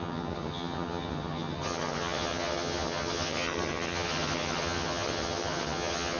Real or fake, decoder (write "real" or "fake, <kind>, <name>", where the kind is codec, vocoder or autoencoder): fake, vocoder, HiFi-GAN